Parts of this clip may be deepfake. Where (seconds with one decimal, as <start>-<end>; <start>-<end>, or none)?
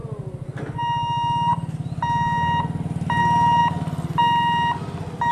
none